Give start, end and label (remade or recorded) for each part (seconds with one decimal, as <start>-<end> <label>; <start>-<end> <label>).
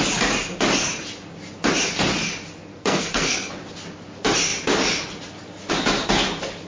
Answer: 0.0-2.7 recorded; 2.7-3.5 remade; 3.5-6.7 recorded